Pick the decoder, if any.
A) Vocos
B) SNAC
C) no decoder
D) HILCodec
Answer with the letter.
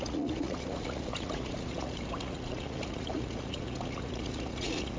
A